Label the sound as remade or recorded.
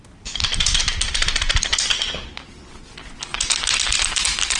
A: recorded